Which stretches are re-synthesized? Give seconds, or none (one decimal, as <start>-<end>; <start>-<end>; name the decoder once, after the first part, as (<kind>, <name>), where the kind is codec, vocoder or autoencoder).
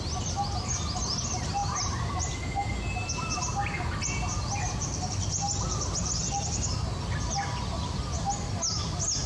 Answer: none